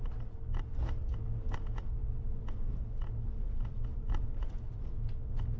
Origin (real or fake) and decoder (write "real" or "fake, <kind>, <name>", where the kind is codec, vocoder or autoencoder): real